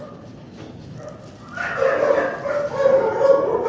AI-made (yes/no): no